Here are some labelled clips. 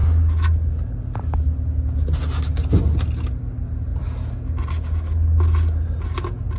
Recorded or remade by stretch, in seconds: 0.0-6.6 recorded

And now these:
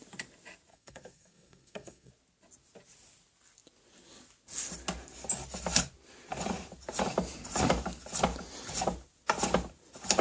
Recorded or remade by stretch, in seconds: 0.0-0.7 recorded; 0.7-2.1 remade; 2.1-10.2 recorded

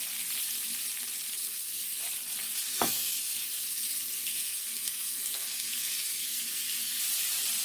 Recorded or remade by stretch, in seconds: 0.0-1.4 recorded; 1.4-2.0 remade; 2.0-2.7 recorded; 2.7-7.0 remade; 7.0-7.6 recorded

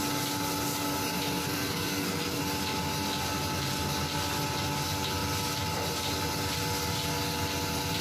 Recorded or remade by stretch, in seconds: 0.0-1.4 recorded; 1.4-2.4 remade; 2.4-8.0 recorded

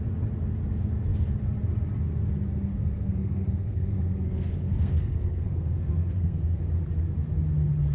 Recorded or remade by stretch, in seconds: 0.0-2.7 recorded; 2.7-6.6 remade; 6.6-7.9 recorded

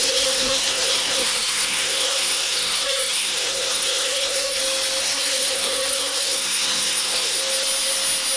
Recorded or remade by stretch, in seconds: 0.0-4.6 remade; 4.6-5.0 recorded; 5.0-7.4 remade; 7.4-8.4 recorded